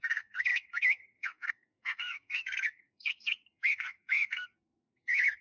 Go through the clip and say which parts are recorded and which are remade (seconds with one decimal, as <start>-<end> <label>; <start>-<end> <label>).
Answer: 0.0-5.4 remade